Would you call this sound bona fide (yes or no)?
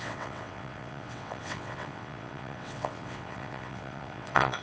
no